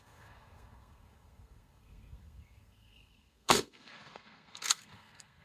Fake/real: fake